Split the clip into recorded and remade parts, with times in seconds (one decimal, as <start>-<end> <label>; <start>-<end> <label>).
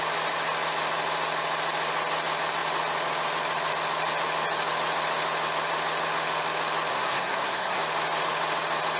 0.0-6.9 recorded; 6.9-7.8 remade; 7.8-9.0 recorded